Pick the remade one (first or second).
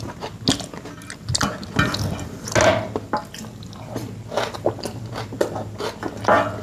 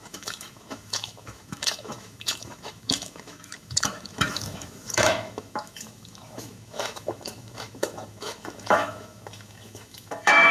second